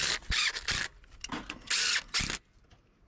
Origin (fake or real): real